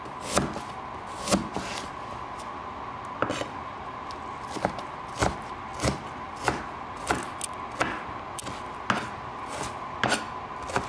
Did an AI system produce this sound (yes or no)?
no